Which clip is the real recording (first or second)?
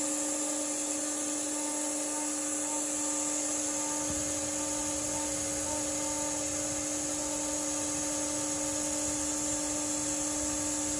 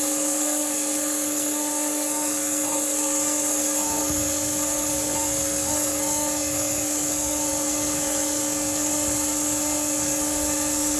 first